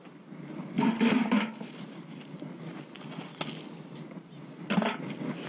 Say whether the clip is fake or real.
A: real